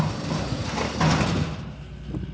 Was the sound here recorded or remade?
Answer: recorded